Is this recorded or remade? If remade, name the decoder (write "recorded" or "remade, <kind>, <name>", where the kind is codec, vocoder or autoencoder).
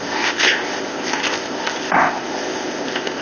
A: remade, codec, ZipCodec